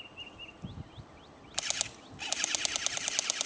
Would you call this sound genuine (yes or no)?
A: yes